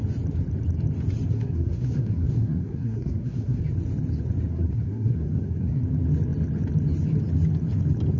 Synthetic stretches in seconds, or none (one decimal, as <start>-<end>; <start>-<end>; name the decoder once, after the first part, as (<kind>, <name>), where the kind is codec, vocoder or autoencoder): 1.3-3.6 (codec, SNAC); 4.5-5.8